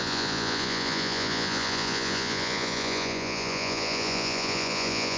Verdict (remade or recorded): remade